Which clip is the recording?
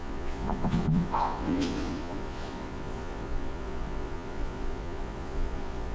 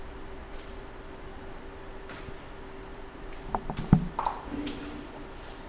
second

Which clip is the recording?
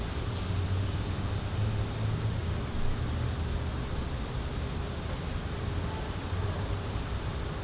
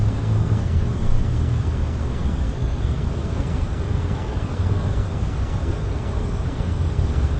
first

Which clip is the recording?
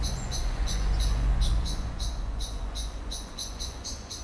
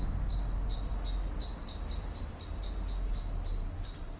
second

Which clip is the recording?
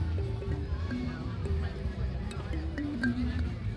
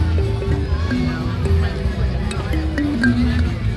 second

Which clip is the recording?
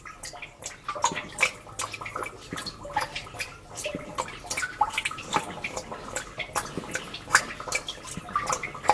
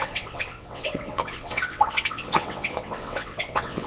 first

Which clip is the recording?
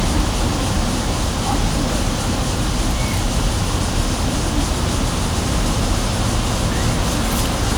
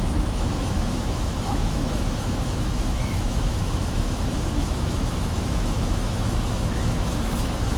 first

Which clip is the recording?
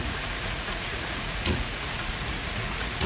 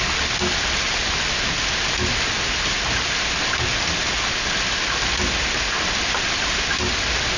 second